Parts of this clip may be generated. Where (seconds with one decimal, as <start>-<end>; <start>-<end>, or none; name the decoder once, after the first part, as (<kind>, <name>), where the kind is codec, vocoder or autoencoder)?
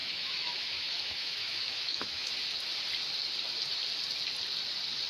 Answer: 0.0-2.3 (autoencoder, DAC-VAE)